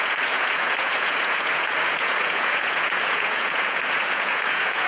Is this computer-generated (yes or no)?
yes